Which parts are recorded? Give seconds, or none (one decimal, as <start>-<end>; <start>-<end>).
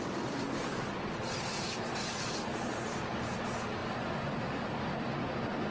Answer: 0.0-5.7